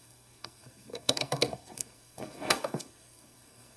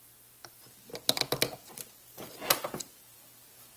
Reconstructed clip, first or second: first